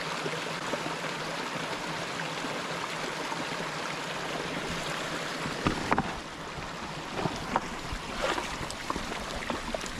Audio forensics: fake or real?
real